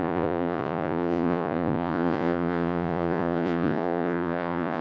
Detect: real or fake fake